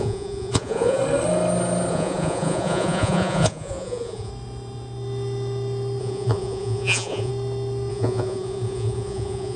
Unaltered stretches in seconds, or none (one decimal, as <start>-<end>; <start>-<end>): 1.0-1.9; 4.3-6.0; 7.3-7.9